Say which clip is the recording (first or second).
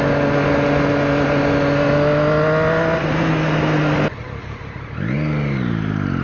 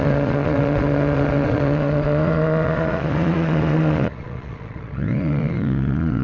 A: first